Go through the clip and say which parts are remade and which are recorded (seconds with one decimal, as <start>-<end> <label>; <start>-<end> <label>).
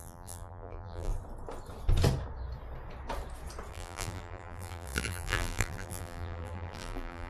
0.0-1.1 remade; 1.1-3.7 recorded; 3.7-7.3 remade